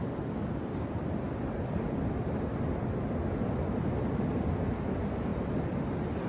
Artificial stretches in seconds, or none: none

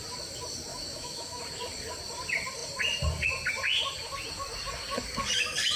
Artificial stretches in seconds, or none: 0.7-1.4 (autoencoder, DAC-VAE)

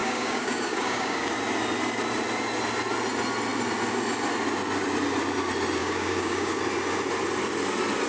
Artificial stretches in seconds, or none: 0.0-1.3 (codec, DAC); 5.8-6.6

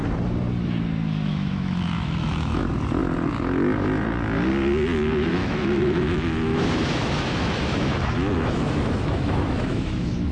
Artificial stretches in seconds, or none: 1.3-2.6 (autoencoder, DAC-VAE); 5.4-10.3

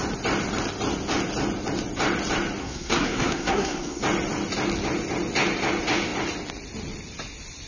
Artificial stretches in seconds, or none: 2.6-4.0 (codec, SNAC)